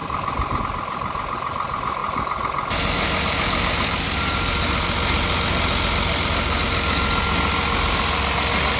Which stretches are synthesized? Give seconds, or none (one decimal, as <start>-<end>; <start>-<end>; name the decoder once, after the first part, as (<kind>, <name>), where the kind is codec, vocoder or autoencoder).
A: none